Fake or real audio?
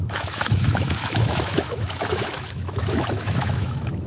fake